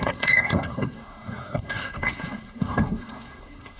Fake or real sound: fake